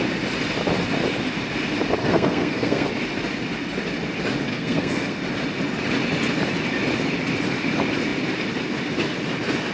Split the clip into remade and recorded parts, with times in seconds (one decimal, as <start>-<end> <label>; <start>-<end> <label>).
0.0-2.0 recorded; 2.0-2.9 remade; 2.9-4.5 recorded; 4.5-5.2 remade; 5.2-9.7 recorded